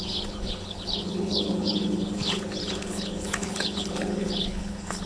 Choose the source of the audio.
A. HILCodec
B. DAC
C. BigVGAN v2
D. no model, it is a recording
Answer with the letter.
A